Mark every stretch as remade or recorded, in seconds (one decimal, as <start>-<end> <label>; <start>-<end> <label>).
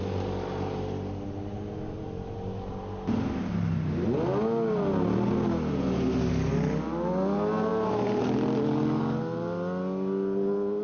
0.0-10.8 recorded